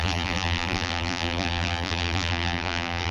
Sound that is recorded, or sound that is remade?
remade